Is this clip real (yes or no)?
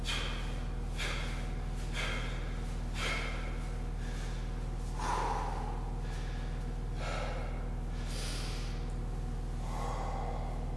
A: yes